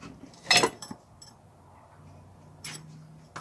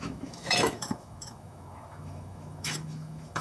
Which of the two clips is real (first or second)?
first